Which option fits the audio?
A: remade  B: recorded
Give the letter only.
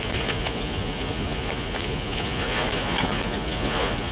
A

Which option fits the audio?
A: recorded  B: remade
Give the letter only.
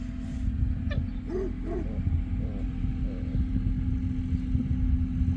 A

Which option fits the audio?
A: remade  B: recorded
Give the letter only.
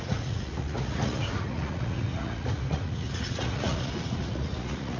A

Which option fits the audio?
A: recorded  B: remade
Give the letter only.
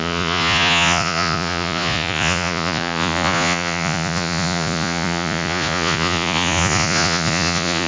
B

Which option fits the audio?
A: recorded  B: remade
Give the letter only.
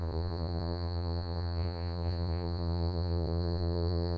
B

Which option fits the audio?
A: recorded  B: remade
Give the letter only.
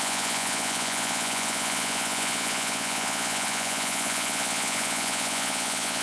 B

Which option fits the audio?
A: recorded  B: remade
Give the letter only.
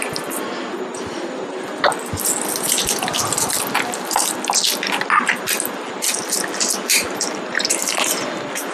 A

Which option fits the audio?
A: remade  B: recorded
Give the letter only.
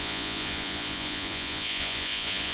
A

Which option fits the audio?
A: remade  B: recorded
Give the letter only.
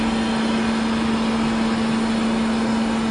B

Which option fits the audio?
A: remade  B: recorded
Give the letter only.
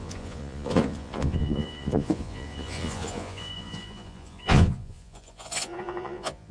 A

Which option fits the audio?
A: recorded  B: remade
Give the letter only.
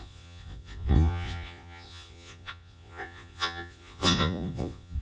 B